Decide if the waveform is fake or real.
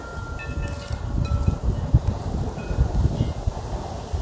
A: real